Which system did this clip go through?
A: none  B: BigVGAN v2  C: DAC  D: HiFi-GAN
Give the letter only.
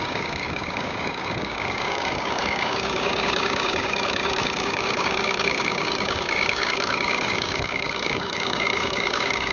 C